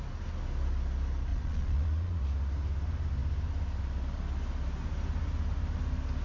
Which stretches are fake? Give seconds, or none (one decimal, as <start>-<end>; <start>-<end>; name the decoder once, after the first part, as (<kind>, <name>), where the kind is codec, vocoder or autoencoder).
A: 1.3-2.2 (vocoder, Vocos)